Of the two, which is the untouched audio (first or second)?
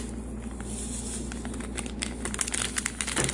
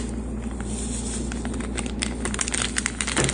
first